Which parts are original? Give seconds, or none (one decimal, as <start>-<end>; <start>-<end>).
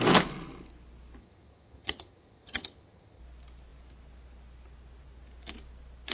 0.0-1.2; 3.2-6.1